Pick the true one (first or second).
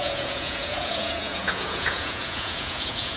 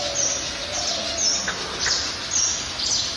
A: second